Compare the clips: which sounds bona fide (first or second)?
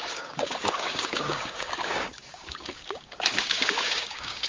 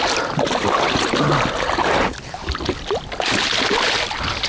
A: second